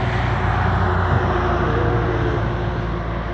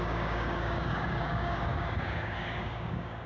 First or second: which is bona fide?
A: first